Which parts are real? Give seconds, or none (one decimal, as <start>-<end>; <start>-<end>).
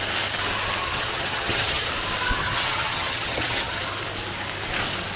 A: 0.0-0.8; 1.9-2.4; 3.8-5.2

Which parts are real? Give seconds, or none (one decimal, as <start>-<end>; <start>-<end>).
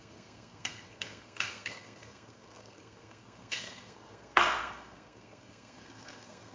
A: none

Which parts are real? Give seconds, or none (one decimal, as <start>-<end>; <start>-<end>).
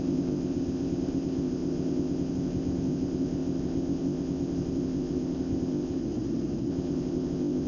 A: 6.0-6.7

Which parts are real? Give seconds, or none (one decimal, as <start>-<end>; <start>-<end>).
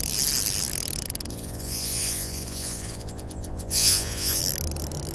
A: 0.0-1.3; 4.4-5.1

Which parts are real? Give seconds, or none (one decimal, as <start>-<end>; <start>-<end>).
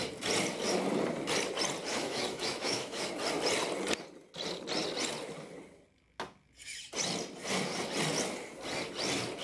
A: 0.0-1.9; 3.1-9.4